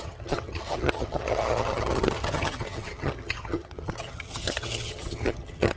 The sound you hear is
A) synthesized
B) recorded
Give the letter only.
A